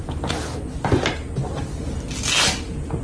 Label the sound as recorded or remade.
recorded